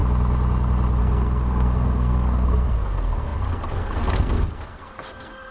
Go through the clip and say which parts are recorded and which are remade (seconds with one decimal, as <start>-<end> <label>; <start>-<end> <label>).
0.0-1.0 recorded; 1.0-5.5 remade